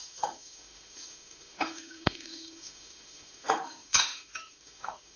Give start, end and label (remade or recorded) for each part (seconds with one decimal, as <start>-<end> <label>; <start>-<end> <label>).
0.0-5.2 remade

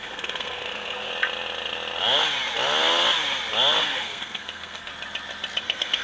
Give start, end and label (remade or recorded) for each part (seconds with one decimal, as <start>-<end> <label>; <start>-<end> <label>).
0.0-1.1 remade; 1.1-3.8 recorded; 3.8-4.9 remade; 4.9-5.6 recorded; 5.6-6.0 remade

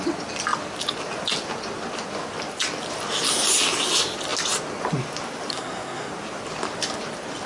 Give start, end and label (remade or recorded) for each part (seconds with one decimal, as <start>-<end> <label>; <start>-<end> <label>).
0.0-5.5 recorded; 5.5-6.1 remade; 6.1-7.5 recorded

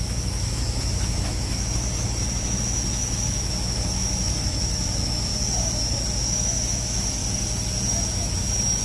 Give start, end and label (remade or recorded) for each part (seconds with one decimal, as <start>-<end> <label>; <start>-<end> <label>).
0.0-5.3 remade; 5.3-6.2 recorded; 6.2-7.2 remade; 7.2-8.1 recorded; 8.1-8.8 remade